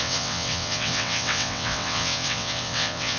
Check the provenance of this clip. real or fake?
fake